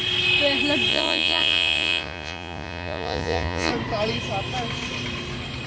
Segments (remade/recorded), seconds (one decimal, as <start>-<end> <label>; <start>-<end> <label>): 0.0-0.9 recorded; 0.9-3.7 remade; 3.7-5.7 recorded